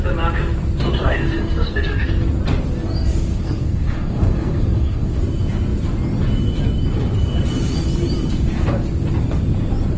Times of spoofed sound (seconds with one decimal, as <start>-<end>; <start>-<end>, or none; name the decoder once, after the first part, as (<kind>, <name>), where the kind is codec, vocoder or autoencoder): 1.0-2.1 (codec, SNAC); 3.3-5.2